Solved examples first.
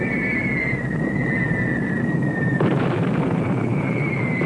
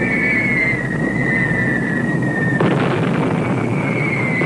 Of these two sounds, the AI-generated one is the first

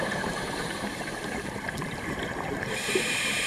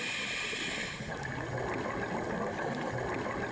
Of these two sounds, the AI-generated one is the first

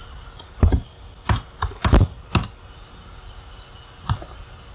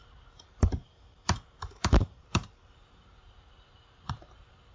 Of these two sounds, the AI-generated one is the second